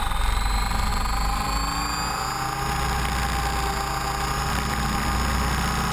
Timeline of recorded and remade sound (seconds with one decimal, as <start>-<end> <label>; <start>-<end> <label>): 0.0-5.9 recorded